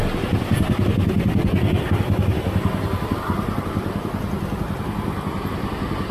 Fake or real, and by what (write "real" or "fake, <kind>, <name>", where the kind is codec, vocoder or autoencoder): real